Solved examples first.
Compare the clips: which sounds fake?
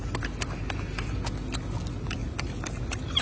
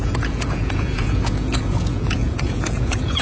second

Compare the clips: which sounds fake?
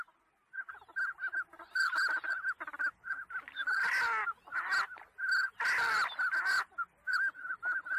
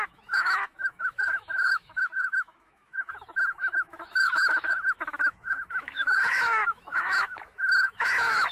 second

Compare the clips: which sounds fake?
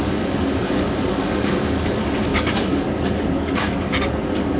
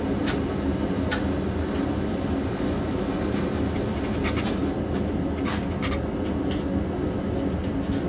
first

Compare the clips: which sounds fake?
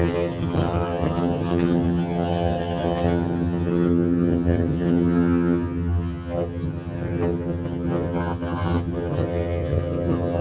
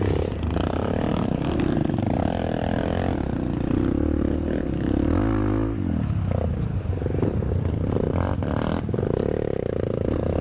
first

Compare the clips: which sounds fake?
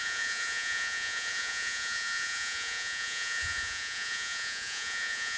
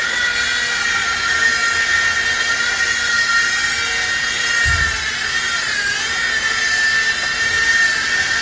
first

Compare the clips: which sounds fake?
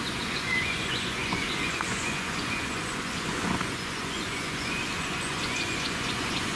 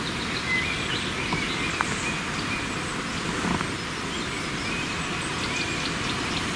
first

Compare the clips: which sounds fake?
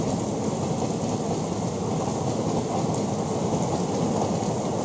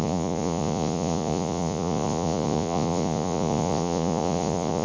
second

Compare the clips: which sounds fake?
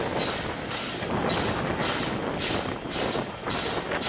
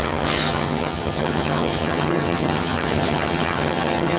second